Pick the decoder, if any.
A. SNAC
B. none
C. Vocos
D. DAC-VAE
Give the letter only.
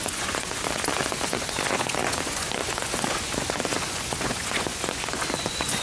C